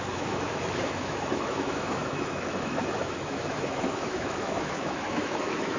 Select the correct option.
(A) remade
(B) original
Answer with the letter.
A